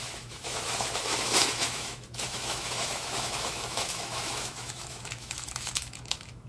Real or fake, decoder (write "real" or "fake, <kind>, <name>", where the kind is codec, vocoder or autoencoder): fake, autoencoder, DAC-VAE